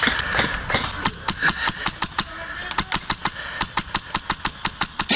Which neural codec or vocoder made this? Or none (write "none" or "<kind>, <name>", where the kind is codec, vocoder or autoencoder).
none